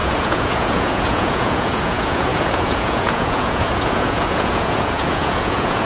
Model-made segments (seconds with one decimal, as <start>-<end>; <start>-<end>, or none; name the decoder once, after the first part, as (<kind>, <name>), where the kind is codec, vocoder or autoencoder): 0.0-5.9 (vocoder, Vocos)

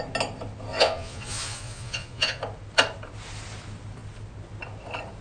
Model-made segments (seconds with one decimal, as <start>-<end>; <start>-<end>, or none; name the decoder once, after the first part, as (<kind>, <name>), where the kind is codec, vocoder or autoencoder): 0.7-2.4 (vocoder, Vocos)

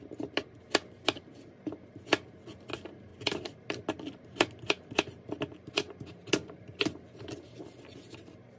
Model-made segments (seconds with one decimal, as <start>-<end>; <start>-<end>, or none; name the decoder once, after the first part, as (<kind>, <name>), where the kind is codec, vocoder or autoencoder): none

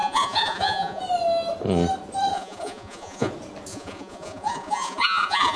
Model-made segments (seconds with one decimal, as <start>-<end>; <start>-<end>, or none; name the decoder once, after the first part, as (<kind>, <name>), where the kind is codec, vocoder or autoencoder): 0.0-1.0 (vocoder, Vocos); 2.3-3.3; 3.7-5.6

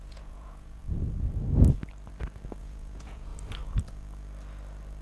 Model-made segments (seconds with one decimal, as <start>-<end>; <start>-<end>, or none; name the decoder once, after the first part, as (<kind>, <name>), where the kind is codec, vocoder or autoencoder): 0.0-0.8 (vocoder, Vocos); 2.6-3.3

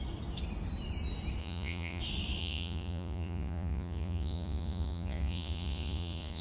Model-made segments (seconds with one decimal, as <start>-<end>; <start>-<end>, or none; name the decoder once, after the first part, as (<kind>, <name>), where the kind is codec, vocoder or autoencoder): 1.4-2.0 (vocoder, Vocos); 2.4-6.4

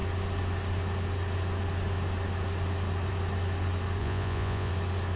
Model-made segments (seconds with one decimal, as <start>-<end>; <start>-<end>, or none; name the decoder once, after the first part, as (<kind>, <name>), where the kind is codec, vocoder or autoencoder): 4.0-4.7 (vocoder, Vocos)

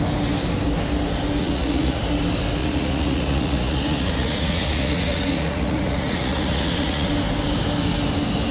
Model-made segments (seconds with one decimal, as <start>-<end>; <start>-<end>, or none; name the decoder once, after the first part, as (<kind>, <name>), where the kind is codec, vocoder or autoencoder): 1.4-2.0 (vocoder, Vocos); 2.6-7.1